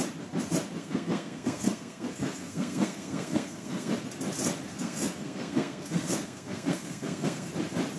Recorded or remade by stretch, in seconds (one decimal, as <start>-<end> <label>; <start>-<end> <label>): 0.0-0.8 recorded; 0.8-3.9 remade; 3.9-4.7 recorded; 4.7-7.5 remade; 7.5-8.0 recorded